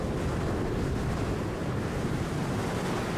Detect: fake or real real